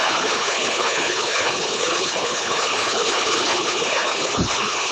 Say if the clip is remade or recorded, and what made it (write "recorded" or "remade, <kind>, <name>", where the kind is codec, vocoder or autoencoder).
remade, codec, HILCodec